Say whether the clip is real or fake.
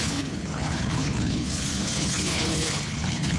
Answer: fake